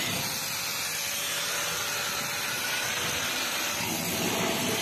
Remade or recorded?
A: recorded